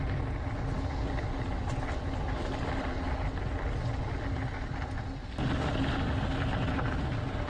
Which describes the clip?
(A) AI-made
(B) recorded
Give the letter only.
B